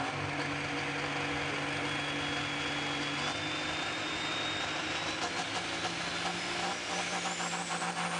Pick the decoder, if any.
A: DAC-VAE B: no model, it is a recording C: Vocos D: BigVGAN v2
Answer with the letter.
B